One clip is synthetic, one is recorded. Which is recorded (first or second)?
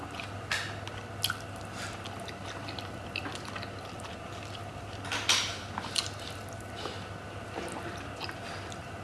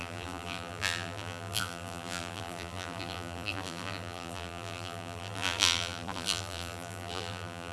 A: first